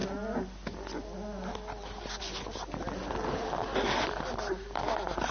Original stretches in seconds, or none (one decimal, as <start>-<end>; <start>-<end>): 0.0-5.3